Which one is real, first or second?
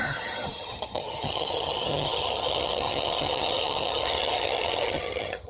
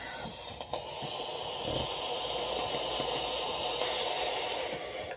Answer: second